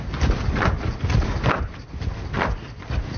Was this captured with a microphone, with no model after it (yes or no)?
yes